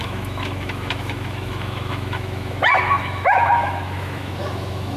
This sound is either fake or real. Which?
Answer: fake